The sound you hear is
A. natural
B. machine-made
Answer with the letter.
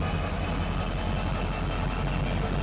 A